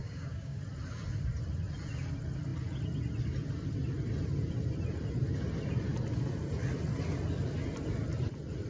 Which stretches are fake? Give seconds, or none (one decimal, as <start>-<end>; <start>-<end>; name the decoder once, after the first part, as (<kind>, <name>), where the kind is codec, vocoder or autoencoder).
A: 0.0-0.6 (codec, DAC)